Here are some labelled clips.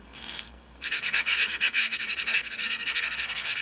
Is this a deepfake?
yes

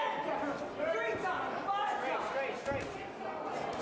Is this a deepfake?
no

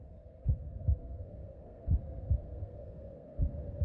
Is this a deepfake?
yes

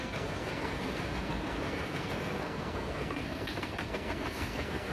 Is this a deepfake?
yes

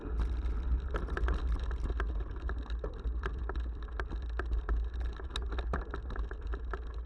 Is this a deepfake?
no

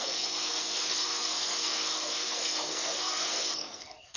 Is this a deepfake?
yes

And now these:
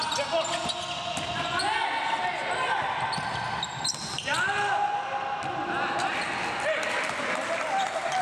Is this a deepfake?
no